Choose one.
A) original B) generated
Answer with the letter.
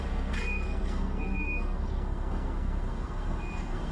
B